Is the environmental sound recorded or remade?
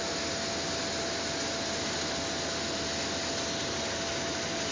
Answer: recorded